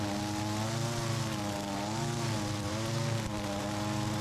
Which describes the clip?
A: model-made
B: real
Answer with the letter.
B